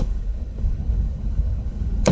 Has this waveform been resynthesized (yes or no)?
yes